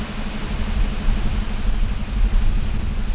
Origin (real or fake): real